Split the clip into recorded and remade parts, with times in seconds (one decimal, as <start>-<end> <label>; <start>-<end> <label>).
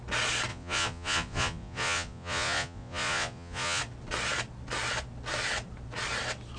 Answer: 0.0-0.5 recorded; 0.5-3.8 remade; 3.8-6.6 recorded